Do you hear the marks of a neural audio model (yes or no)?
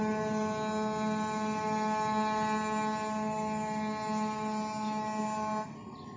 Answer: no